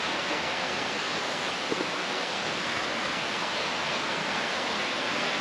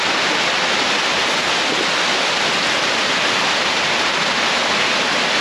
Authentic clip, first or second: second